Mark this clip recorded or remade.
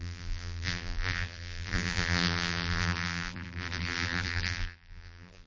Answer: remade